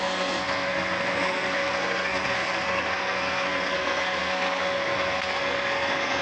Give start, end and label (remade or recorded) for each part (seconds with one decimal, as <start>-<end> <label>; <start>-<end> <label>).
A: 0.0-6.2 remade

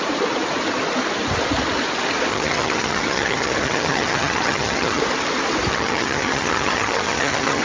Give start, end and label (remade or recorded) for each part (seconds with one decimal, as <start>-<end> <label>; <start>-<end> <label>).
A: 0.0-2.3 recorded; 2.3-5.0 remade; 5.0-5.7 recorded; 5.7-7.6 remade

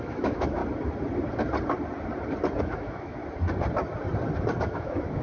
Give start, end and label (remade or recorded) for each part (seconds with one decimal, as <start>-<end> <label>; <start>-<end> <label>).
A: 0.0-0.6 remade; 0.6-2.6 recorded; 2.6-3.2 remade; 3.2-4.6 recorded; 4.6-5.2 remade

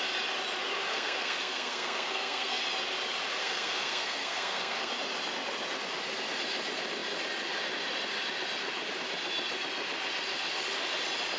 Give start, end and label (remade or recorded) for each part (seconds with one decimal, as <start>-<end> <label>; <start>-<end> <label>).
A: 0.0-0.9 recorded; 0.9-2.6 remade; 2.6-3.4 recorded; 3.4-4.9 remade; 4.9-11.4 recorded